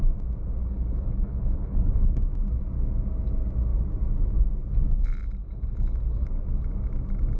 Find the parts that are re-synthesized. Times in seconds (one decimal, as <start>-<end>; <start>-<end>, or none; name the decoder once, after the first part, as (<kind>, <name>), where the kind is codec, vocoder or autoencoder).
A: 0.6-2.2 (codec, HILCodec); 5.4-6.3

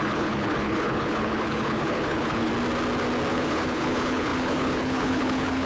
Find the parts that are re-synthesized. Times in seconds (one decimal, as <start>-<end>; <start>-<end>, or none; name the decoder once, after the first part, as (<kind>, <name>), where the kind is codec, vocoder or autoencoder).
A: 0.0-2.5 (codec, HILCodec); 3.3-5.7